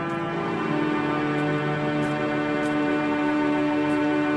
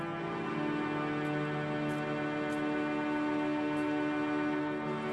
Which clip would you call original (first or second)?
second